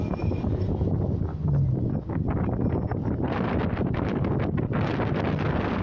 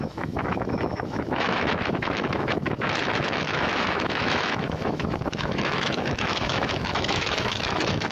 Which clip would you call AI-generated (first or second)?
second